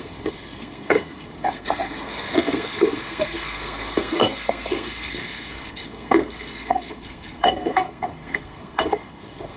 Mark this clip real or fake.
fake